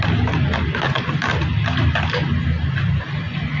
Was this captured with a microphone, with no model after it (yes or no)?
yes